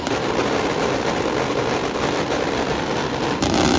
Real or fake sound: real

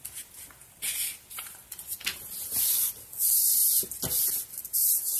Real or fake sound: real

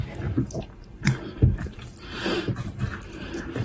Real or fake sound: fake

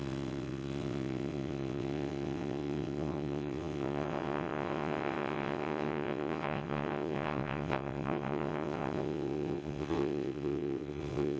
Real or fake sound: fake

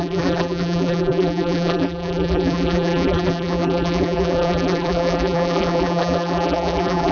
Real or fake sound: fake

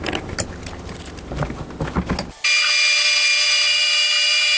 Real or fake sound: real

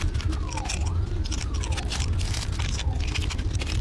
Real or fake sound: real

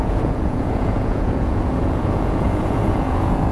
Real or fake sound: fake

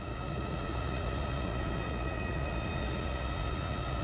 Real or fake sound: fake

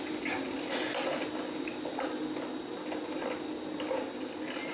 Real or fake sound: real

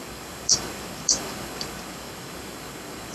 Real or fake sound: fake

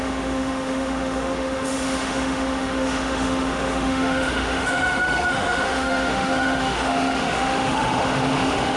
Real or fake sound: fake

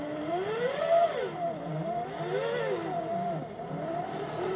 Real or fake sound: real